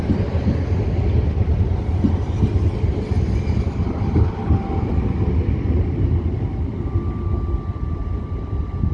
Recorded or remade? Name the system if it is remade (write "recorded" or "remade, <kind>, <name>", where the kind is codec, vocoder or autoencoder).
recorded